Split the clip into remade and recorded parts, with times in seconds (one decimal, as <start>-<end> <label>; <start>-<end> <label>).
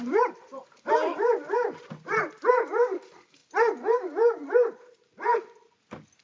0.0-1.8 remade; 1.8-2.5 recorded; 2.5-3.4 remade; 3.4-6.2 recorded